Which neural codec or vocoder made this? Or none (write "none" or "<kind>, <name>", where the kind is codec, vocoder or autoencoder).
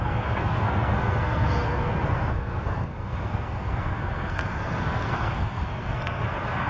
codec, SNAC